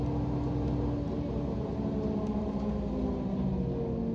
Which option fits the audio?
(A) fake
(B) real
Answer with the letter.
B